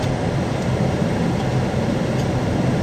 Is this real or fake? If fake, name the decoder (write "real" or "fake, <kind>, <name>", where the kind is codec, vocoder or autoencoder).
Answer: fake, vocoder, BigVGAN v2